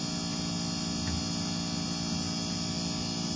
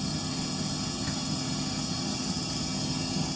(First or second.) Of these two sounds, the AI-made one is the second